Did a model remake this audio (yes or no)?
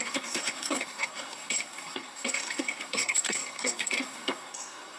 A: yes